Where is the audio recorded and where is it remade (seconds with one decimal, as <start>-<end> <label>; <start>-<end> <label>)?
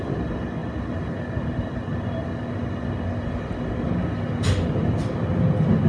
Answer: 0.0-5.9 recorded